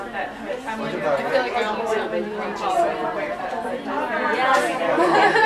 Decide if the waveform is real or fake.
real